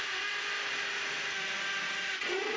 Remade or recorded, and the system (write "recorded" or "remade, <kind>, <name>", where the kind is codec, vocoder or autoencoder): recorded